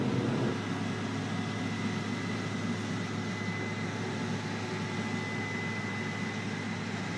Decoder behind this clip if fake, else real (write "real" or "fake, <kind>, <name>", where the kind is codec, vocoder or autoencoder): real